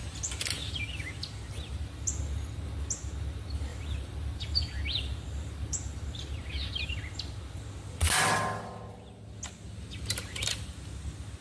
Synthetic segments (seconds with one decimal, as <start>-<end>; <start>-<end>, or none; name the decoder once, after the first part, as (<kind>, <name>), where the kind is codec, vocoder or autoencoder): 3.7-6.9 (vocoder, BigVGAN v2)